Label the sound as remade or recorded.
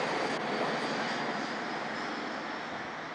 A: recorded